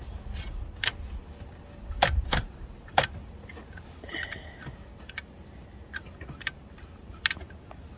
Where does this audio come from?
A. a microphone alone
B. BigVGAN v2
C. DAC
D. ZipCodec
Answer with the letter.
A